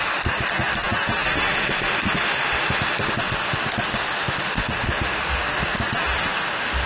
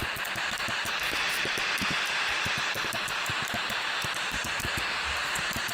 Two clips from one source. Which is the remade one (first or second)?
second